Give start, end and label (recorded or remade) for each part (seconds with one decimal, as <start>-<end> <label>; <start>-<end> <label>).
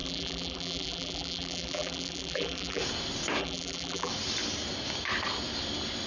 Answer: 0.0-2.8 remade; 2.8-3.4 recorded; 3.4-4.1 remade; 4.1-6.1 recorded